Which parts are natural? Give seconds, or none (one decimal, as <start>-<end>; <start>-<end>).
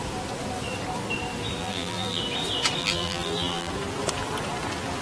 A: 0.0-1.6; 2.2-2.8; 3.7-5.0